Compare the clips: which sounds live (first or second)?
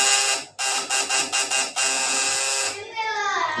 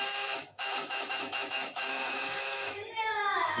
first